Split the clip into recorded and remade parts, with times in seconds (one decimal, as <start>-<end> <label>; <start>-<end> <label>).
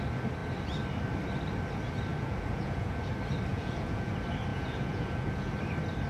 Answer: 0.0-2.1 recorded; 2.1-3.1 remade; 3.1-3.5 recorded; 3.5-4.1 remade; 4.1-4.5 recorded; 4.5-5.5 remade; 5.5-6.1 recorded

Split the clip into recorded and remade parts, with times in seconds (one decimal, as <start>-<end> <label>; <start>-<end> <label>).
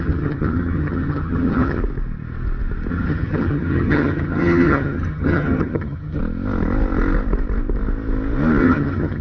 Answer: 0.0-1.8 remade; 1.8-2.9 recorded; 2.9-6.2 remade; 6.2-8.6 recorded; 8.6-9.2 remade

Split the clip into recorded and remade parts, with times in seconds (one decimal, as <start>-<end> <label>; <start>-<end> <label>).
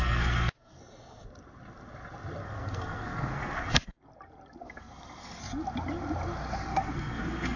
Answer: 0.0-0.8 remade; 0.8-2.4 recorded; 2.4-4.0 remade; 4.0-4.6 recorded; 4.6-5.4 remade; 5.4-6.7 recorded; 6.7-7.6 remade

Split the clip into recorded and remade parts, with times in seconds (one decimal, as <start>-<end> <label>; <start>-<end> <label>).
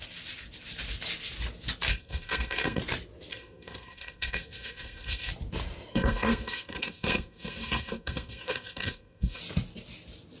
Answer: 0.0-1.9 recorded; 1.9-2.8 remade; 2.8-3.3 recorded; 3.3-5.3 remade; 5.3-5.9 recorded; 5.9-9.4 remade; 9.4-10.4 recorded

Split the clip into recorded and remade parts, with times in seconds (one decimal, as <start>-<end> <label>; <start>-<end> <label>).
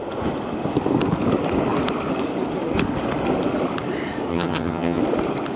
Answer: 0.0-4.3 recorded; 4.3-5.0 remade; 5.0-5.6 recorded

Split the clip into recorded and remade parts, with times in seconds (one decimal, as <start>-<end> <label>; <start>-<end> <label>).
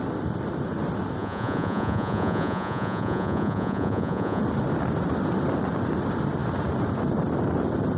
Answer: 0.0-1.2 recorded; 1.2-4.4 remade; 4.4-8.0 recorded